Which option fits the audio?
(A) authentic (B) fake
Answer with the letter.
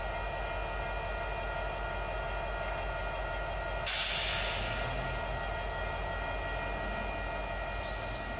A